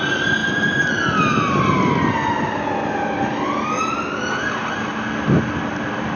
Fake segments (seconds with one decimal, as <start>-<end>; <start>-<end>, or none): 0.4-0.9